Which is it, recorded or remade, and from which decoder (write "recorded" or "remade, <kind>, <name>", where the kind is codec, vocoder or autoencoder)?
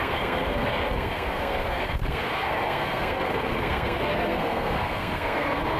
remade, codec, SNAC